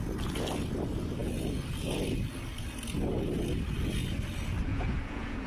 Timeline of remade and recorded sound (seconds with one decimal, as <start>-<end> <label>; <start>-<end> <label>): 0.0-4.7 recorded; 4.7-5.5 remade